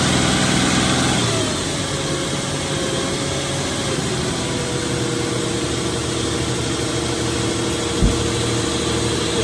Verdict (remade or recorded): recorded